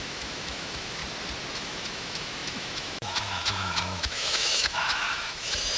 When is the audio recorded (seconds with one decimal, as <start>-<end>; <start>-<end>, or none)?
1.0-1.5